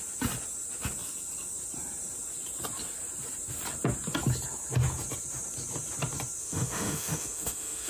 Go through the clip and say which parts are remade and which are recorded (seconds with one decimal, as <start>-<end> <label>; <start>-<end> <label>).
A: 0.0-6.4 recorded; 6.4-7.9 remade